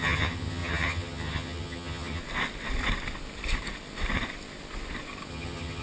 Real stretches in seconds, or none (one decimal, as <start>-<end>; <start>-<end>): 2.2-5.3